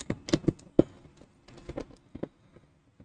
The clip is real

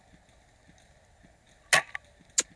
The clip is real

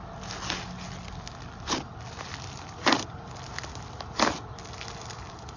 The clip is real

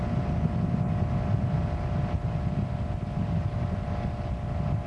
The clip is real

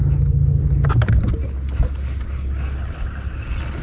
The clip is real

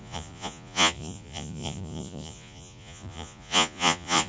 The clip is fake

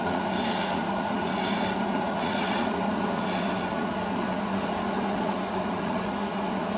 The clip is fake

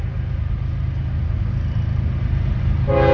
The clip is real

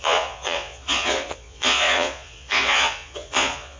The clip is fake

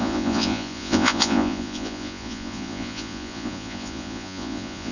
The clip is fake